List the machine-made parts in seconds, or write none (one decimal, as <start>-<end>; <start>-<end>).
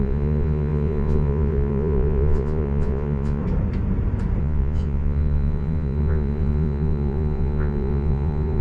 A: 0.0-3.4; 4.4-8.6